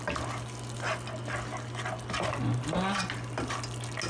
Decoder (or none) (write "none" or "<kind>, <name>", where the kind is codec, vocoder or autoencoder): none